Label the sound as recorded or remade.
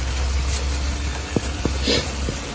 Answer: recorded